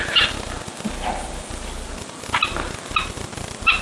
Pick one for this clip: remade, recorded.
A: recorded